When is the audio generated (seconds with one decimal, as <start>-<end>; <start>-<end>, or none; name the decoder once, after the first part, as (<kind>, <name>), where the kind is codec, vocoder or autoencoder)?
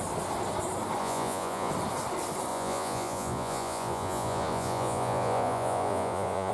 1.0-1.7 (vocoder, Vocos); 2.5-6.5